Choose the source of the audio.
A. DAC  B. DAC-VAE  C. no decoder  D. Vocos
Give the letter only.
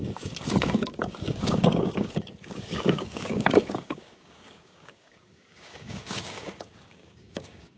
A